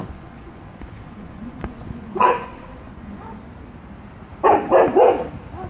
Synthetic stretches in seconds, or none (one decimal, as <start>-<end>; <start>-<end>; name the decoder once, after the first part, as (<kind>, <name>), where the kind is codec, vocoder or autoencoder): 0.0-3.4 (vocoder, Vocos)